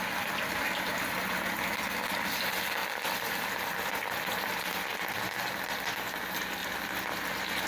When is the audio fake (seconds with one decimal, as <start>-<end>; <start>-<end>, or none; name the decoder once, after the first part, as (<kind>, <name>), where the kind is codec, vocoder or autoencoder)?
2.8-5.3 (vocoder, BigVGAN v2)